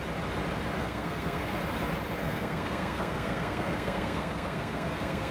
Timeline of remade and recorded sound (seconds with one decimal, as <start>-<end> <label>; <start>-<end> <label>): 0.0-0.8 recorded; 0.8-1.6 remade; 1.6-2.2 recorded; 2.2-5.3 remade